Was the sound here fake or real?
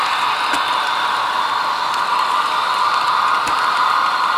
fake